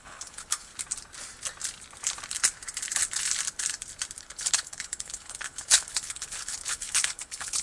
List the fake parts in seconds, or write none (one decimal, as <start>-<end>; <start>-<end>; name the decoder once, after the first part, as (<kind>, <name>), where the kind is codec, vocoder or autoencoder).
0.0-0.7 (codec, HILCodec); 4.2-7.6